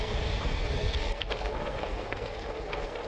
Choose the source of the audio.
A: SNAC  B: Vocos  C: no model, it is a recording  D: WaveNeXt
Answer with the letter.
A